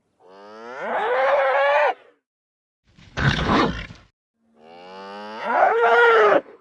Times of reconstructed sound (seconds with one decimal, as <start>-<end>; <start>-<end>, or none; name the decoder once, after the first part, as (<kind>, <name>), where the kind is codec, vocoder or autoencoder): 0.9-1.4 (codec, HILCodec); 3.0-3.6; 5.6-6.6